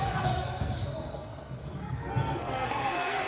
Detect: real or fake fake